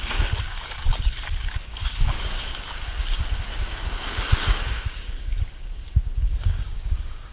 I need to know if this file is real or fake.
fake